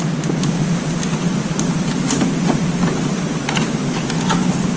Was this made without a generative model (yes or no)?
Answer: yes